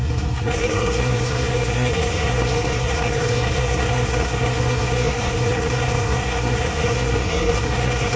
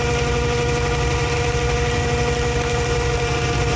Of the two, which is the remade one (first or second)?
first